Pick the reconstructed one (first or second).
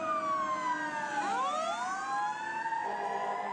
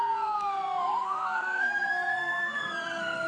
second